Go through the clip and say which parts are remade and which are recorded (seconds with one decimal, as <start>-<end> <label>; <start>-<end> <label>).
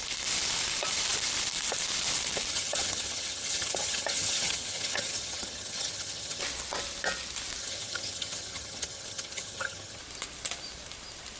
0.0-2.5 recorded; 2.5-6.4 remade; 6.4-7.6 recorded; 7.6-10.0 remade; 10.0-11.4 recorded